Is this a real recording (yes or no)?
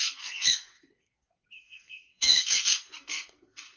no